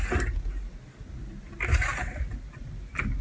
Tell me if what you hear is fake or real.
real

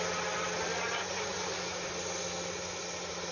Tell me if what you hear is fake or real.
real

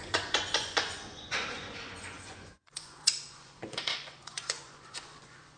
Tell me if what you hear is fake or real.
fake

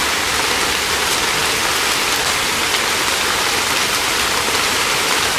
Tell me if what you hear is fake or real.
real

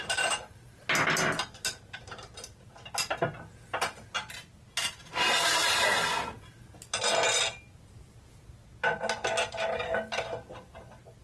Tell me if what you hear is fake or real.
real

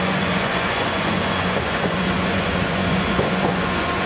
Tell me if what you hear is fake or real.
fake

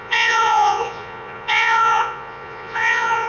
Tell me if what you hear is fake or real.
fake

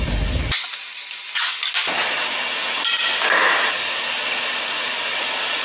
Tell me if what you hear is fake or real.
real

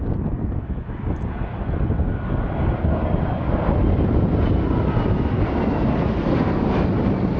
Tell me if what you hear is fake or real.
real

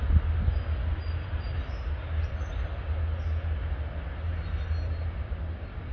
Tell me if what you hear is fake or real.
real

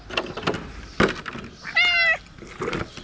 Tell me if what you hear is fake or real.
real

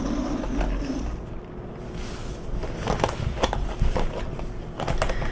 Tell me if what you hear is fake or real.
real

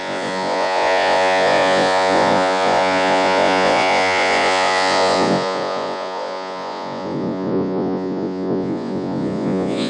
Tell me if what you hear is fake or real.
fake